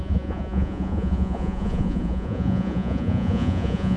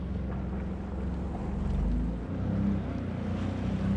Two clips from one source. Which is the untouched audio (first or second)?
second